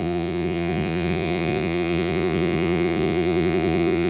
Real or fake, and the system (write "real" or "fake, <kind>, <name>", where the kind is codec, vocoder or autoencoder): fake, vocoder, Vocos